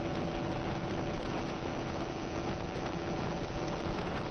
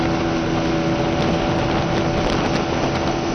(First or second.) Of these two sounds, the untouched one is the second